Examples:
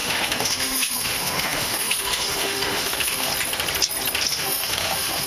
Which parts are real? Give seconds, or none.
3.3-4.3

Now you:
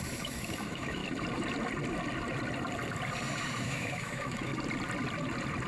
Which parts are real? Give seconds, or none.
1.0-3.6; 4.5-5.7

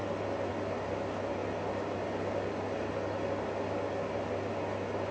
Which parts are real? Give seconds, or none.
0.0-5.1

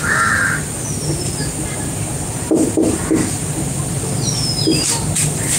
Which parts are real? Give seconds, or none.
0.0-5.6

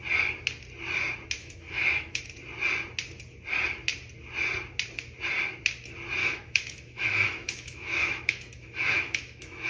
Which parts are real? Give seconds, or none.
0.0-1.4; 2.2-6.2

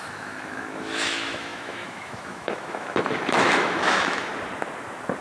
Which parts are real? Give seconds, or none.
4.3-5.2

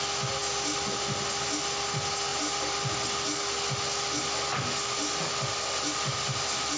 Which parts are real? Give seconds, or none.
0.0-6.8